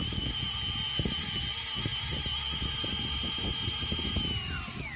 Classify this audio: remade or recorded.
recorded